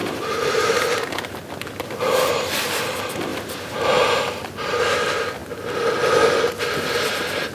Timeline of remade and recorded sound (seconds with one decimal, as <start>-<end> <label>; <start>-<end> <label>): 0.0-1.4 remade; 1.4-3.3 recorded; 3.3-4.8 remade; 4.8-7.5 recorded